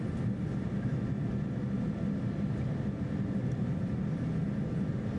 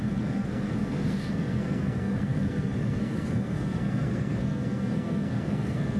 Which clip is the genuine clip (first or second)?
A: first